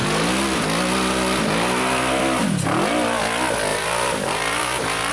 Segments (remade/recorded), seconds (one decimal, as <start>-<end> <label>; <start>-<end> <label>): 0.0-3.7 recorded; 3.7-5.1 remade